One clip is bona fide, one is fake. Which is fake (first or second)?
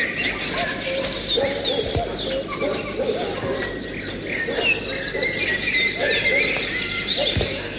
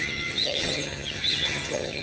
second